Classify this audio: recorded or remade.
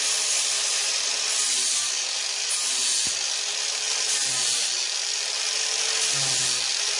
recorded